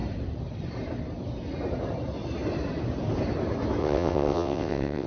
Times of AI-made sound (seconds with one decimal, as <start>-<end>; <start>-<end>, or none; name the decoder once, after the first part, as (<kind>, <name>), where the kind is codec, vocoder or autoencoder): 3.8-5.1 (vocoder, WaveNeXt)